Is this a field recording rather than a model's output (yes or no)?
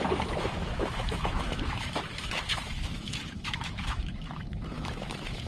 no